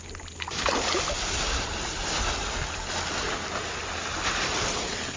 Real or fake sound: real